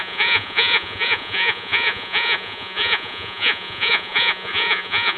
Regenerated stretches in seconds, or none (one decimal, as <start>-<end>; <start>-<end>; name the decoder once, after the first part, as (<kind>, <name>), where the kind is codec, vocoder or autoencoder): 0.0-5.2 (vocoder, Vocos)